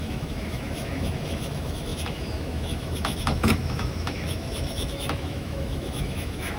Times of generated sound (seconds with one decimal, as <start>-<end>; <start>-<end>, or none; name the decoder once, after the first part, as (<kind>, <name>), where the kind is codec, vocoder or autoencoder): 0.0-6.6 (autoencoder, DAC-VAE)